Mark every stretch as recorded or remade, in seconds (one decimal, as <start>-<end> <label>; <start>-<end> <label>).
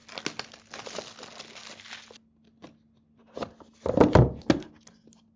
0.0-5.4 recorded